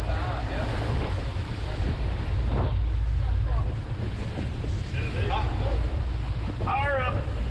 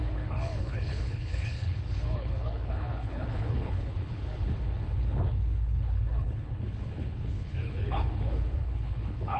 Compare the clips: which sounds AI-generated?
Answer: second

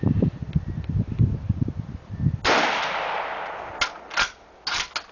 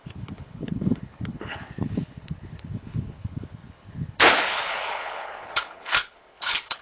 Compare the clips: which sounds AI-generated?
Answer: second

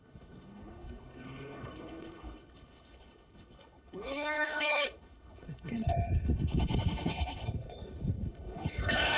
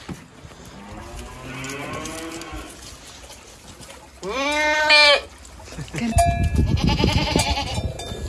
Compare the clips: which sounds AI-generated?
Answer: first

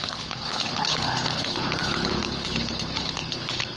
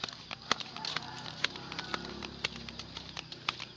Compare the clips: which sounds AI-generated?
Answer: first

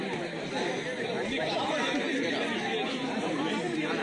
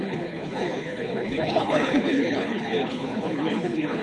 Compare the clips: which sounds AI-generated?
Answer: second